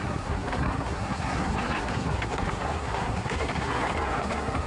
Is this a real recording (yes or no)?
no